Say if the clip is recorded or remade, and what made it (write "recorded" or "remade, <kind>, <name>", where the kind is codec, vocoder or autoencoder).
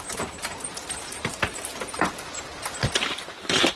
remade, vocoder, BigVGAN v2